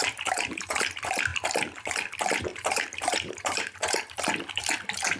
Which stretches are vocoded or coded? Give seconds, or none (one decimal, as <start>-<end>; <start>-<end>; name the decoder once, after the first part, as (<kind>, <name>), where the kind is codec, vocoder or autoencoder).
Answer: 0.0-0.8 (vocoder, BigVGAN v2); 2.5-4.2